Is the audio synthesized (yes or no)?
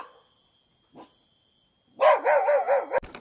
no